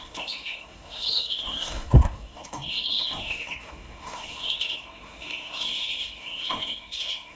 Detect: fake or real fake